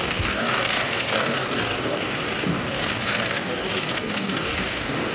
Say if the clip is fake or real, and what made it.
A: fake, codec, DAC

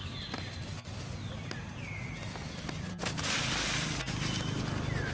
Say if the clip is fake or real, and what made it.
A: real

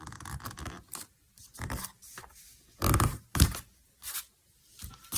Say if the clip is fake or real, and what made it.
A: real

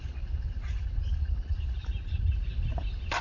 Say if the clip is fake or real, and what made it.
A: real